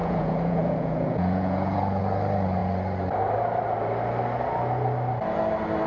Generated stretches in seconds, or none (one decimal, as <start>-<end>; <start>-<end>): 0.0-2.0